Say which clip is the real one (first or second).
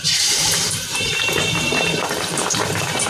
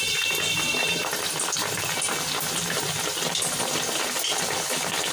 second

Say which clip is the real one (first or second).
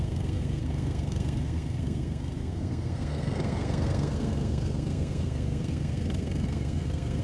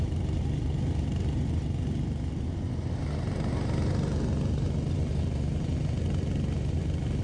second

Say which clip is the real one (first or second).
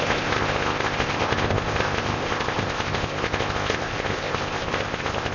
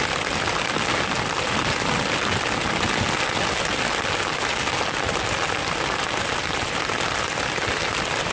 second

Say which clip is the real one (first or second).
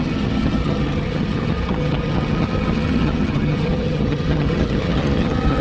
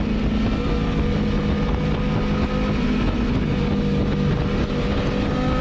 second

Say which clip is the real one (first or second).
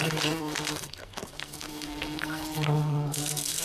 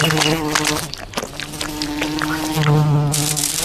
second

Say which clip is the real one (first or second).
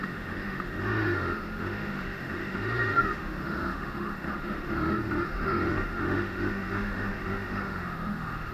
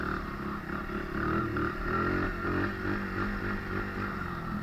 second